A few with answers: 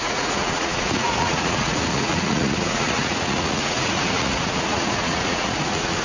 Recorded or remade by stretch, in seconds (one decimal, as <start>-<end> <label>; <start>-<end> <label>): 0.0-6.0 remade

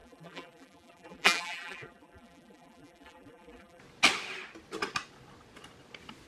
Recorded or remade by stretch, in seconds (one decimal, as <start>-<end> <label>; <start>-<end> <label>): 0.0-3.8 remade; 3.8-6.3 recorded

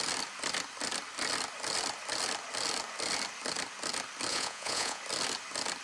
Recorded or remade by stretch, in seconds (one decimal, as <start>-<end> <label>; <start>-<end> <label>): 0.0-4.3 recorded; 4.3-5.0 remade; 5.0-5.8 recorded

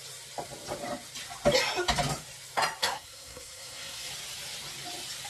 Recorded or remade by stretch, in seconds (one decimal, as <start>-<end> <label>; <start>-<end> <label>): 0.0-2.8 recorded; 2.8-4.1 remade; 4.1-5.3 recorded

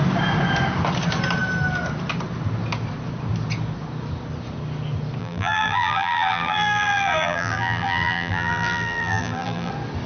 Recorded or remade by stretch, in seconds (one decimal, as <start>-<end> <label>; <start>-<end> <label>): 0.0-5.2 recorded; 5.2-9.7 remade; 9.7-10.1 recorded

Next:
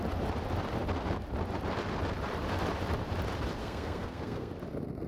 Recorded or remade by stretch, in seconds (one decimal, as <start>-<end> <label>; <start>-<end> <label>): 0.0-3.6 recorded; 3.6-4.5 remade; 4.5-5.1 recorded